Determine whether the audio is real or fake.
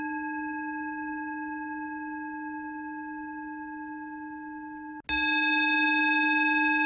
real